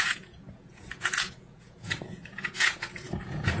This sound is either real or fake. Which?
fake